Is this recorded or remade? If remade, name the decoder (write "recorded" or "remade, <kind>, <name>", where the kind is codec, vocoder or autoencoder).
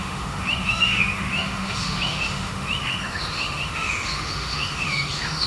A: remade, autoencoder, DAC-VAE